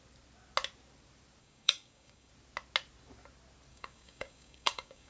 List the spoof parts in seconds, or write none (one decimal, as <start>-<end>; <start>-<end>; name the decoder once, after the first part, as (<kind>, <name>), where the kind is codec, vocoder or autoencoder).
1.4-2.3 (codec, DAC); 3.7-5.1